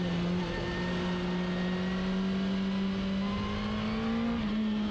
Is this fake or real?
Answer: real